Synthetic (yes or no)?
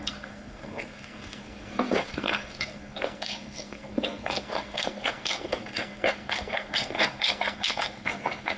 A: yes